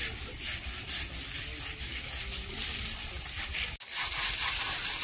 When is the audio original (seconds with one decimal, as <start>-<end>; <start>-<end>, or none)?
0.0-5.0